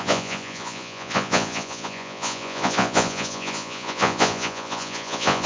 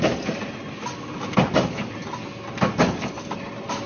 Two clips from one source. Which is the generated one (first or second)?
first